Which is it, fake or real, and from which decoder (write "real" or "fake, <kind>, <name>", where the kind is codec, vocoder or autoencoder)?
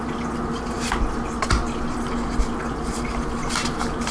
real